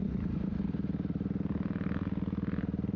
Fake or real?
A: real